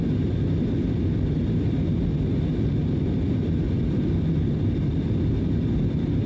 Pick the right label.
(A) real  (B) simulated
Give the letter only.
A